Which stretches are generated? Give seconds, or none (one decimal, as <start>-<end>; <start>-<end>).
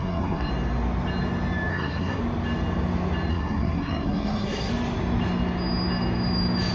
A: 0.0-0.5; 1.7-2.2; 3.3-4.7